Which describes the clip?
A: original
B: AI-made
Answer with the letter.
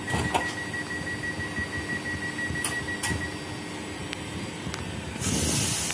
A